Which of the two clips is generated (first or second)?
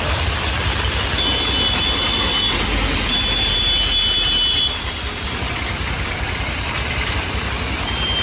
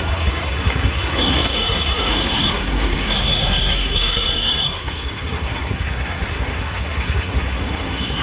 second